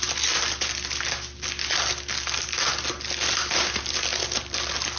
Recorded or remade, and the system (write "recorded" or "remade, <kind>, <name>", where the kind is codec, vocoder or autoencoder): recorded